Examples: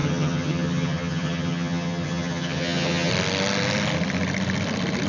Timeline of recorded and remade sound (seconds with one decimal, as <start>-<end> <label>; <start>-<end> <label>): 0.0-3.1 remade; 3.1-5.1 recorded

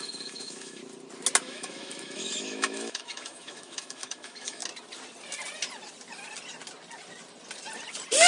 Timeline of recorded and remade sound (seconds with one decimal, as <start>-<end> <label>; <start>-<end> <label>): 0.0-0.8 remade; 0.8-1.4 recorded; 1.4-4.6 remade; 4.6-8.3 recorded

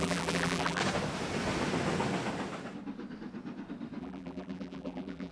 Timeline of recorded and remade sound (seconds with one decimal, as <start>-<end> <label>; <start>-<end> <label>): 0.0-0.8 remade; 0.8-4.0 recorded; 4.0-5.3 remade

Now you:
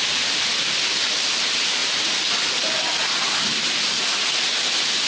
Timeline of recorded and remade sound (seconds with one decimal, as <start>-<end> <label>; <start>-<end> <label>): 0.0-5.1 recorded

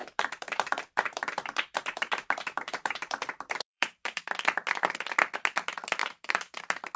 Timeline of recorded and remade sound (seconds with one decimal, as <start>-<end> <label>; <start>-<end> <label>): 0.0-4.2 remade; 4.2-6.0 recorded; 6.0-6.6 remade; 6.6-7.0 recorded

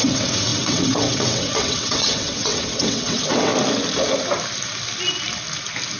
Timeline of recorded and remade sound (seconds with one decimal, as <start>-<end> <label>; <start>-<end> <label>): 0.0-3.5 remade; 3.5-6.0 recorded

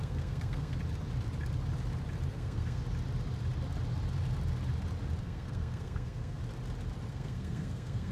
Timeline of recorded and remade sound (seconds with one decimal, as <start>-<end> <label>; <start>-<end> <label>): 0.0-0.8 remade; 0.8-2.3 recorded; 2.3-2.8 remade; 2.8-5.2 recorded; 5.2-6.4 remade; 6.4-7.1 recorded; 7.1-8.1 remade

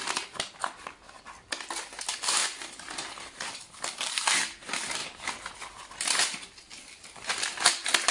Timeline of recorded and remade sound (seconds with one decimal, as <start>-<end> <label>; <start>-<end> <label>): 0.0-2.0 recorded; 2.0-2.4 remade; 2.4-3.1 recorded; 3.1-5.0 remade; 5.0-6.2 recorded; 6.2-8.1 remade